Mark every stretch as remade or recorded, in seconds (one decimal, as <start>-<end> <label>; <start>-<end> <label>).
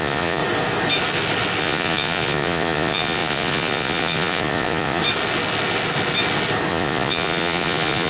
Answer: 0.0-0.4 remade; 0.4-1.6 recorded; 1.6-5.0 remade; 5.0-6.7 recorded; 6.7-8.1 remade